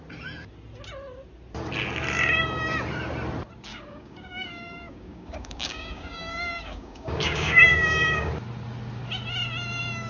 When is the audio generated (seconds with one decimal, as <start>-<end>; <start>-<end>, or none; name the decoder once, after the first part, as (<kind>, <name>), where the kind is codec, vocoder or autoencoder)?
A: 3.7-8.3 (codec, DAC)